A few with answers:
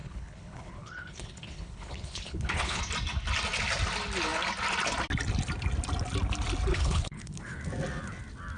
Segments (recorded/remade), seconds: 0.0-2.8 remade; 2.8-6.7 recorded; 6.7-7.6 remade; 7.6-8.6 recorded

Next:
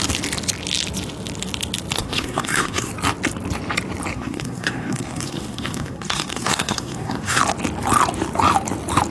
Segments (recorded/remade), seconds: 0.0-2.0 recorded; 2.0-2.9 remade; 2.9-4.1 recorded; 4.1-7.4 remade; 7.4-9.1 recorded

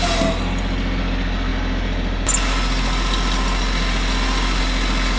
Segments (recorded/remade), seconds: 0.0-5.2 recorded